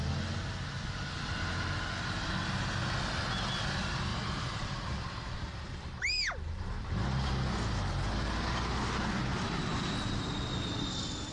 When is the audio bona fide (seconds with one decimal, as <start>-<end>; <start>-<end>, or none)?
0.0-4.1; 7.0-11.3